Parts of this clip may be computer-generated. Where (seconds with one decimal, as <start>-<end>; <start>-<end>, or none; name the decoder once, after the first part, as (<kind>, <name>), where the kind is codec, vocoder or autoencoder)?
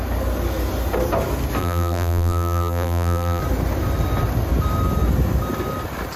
1.6-3.4 (vocoder, BigVGAN v2)